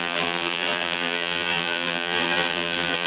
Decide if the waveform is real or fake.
fake